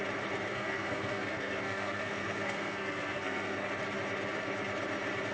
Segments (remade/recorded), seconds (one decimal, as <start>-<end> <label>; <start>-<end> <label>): 0.0-0.5 recorded; 0.5-3.7 remade; 3.7-5.3 recorded